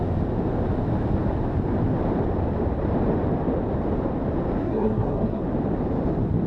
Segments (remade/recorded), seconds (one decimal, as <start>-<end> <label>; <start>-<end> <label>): 0.0-4.6 recorded; 4.6-5.4 remade; 5.4-6.5 recorded